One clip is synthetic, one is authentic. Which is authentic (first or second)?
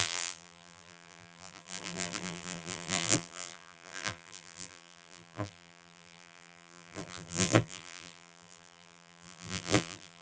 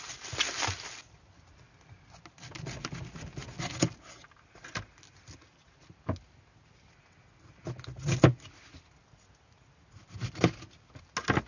second